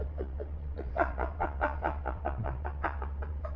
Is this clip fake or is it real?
fake